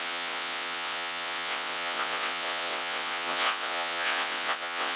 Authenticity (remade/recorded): remade